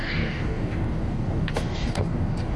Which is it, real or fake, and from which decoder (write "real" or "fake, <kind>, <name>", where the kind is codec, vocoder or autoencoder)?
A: fake, codec, DAC